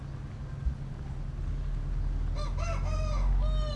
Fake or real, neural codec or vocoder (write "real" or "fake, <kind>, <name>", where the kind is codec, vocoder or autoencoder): real